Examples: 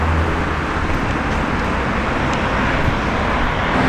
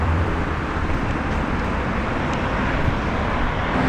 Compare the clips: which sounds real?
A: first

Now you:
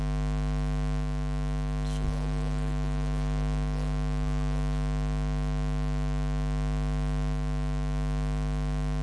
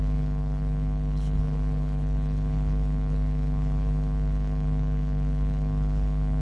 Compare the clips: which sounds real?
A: first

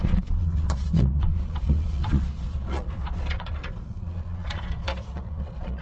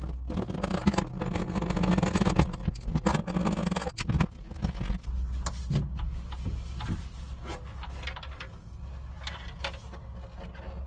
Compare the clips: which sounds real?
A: second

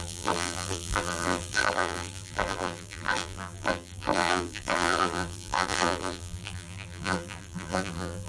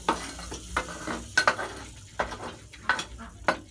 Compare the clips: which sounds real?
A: second